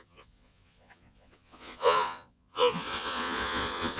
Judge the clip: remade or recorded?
remade